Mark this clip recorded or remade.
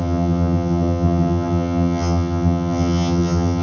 remade